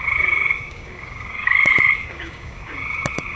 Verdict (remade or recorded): remade